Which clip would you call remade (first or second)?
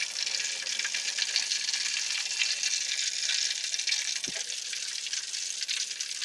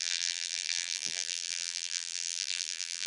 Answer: second